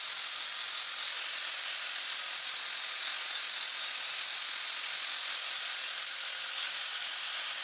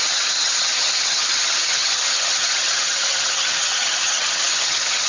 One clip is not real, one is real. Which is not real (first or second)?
second